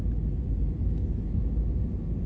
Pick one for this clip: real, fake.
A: real